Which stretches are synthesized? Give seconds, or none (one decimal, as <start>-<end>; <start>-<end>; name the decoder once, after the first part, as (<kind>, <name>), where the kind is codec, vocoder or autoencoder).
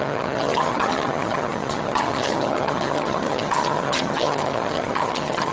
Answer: 0.0-5.5 (vocoder, HiFi-GAN)